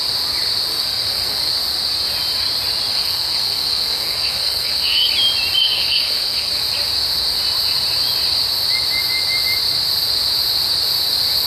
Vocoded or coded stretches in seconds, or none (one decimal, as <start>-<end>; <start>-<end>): 0.7-1.5; 2.9-5.1; 5.6-6.5